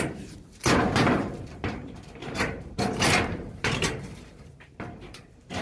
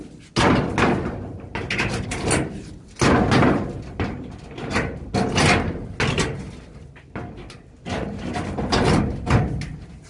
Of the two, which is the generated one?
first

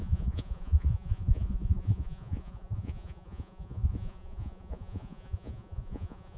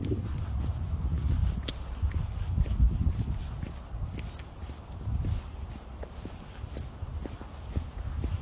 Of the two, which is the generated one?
first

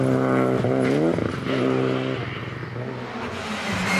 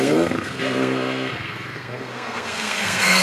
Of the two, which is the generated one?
second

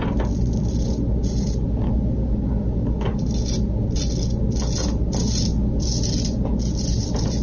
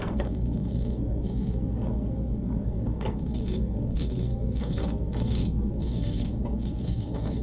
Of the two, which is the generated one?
second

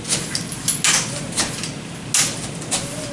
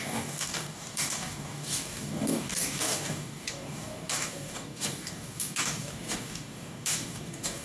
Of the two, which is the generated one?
second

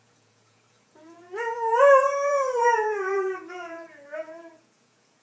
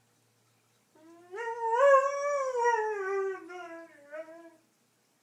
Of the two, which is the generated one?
first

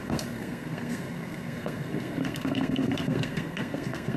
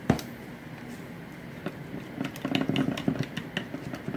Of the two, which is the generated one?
first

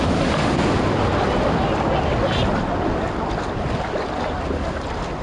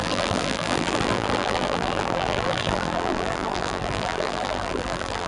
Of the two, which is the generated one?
second